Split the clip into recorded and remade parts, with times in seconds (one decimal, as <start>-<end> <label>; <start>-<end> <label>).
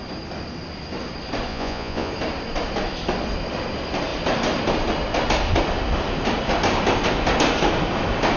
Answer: 0.0-1.5 recorded; 1.5-2.1 remade; 2.1-8.4 recorded